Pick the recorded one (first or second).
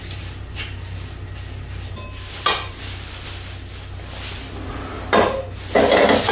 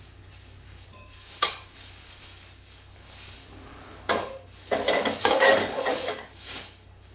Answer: first